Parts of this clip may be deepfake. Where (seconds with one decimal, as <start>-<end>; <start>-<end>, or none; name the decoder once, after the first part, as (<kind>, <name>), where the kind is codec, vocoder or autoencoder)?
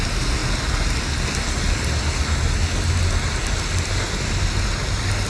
none